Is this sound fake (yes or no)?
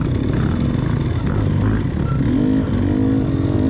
no